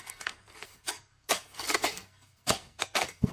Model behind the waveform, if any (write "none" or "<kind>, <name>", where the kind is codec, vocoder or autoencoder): codec, SNAC